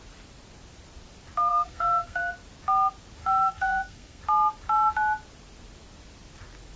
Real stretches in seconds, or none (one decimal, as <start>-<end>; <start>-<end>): 0.0-1.5; 2.2-3.2; 4.2-6.8